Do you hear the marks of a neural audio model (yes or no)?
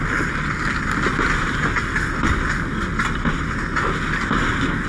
no